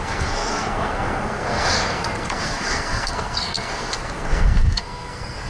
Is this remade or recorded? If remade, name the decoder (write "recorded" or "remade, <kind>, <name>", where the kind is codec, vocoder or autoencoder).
remade, codec, SNAC